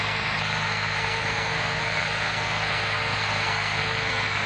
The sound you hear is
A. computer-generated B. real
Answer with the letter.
A